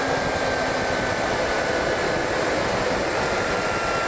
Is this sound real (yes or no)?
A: yes